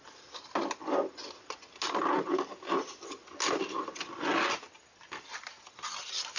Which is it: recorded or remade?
recorded